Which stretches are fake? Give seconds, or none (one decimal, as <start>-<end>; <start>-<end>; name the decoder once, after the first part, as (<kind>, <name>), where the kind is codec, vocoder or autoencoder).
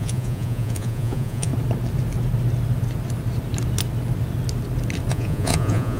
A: 0.0-1.5 (vocoder, Vocos); 5.1-6.0